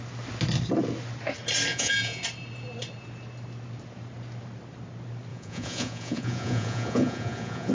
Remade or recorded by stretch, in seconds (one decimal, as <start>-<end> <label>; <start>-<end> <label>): 0.0-1.7 recorded; 1.7-2.2 remade; 2.2-5.3 recorded; 5.3-7.7 remade